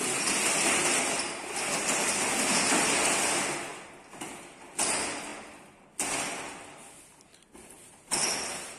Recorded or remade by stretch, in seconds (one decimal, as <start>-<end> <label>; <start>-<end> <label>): 0.0-8.8 recorded